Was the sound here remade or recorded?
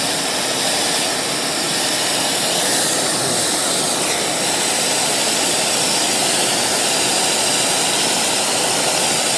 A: recorded